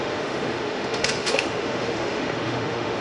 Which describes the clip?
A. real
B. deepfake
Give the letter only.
B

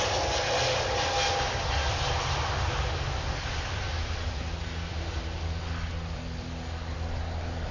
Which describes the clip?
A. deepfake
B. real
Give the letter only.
B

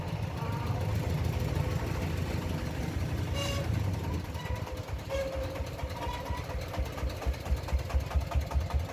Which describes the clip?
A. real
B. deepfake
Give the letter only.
A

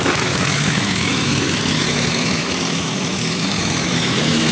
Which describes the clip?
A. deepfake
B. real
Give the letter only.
A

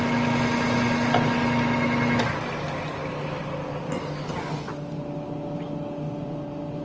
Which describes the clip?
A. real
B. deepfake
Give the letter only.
A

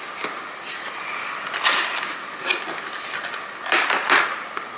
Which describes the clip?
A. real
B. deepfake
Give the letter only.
A